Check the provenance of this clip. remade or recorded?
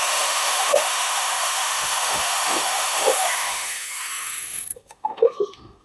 remade